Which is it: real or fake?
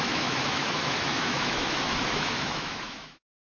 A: fake